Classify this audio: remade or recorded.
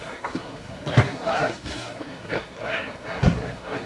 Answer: remade